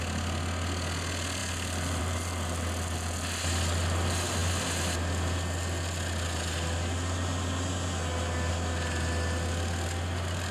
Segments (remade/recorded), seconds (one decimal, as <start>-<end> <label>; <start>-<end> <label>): 0.0-10.5 recorded